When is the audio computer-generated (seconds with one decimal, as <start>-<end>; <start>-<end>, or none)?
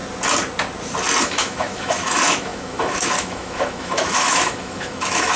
1.2-5.4